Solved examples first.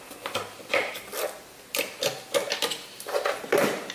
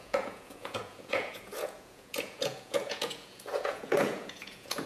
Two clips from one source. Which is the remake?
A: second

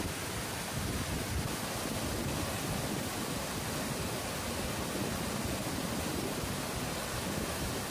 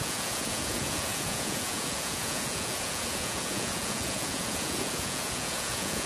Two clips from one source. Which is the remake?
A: second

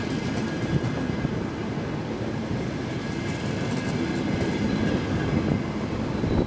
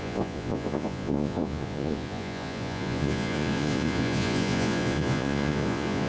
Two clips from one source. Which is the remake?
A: second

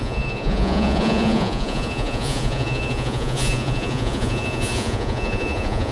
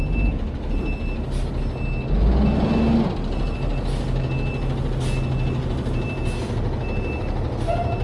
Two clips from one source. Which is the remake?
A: first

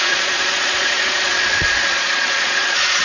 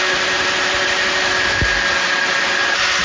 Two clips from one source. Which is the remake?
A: first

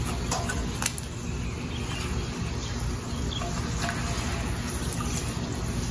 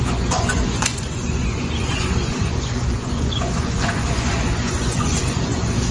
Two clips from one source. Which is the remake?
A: second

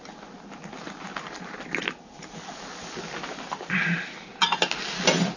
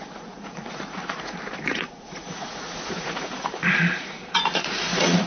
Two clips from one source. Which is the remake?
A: second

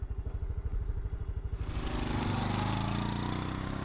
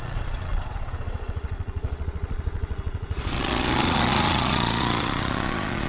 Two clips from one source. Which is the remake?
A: second